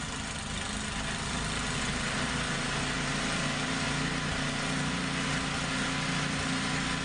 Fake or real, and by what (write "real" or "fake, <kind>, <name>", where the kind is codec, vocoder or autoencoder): real